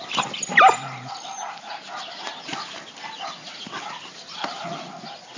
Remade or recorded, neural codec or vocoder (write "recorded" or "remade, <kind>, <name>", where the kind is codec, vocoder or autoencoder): recorded